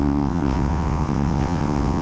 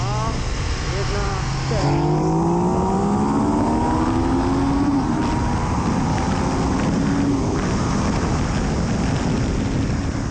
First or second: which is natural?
second